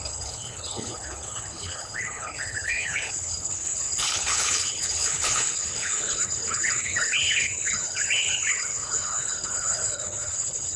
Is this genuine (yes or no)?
no